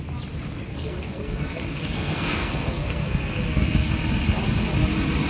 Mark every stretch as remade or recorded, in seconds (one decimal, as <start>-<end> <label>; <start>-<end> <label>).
0.0-0.7 recorded; 0.7-3.9 remade; 3.9-5.3 recorded